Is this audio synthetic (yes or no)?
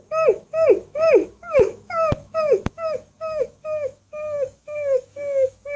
yes